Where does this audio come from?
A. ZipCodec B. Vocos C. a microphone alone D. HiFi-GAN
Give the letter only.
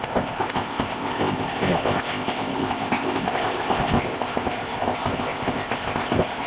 A